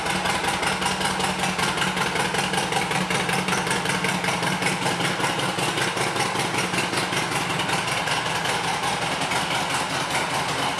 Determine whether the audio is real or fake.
real